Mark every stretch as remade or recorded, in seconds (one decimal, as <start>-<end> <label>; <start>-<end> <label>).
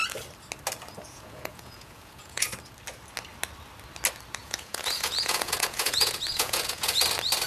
0.0-1.1 recorded; 1.1-2.5 remade; 2.5-4.4 recorded; 4.4-7.0 remade; 7.0-7.5 recorded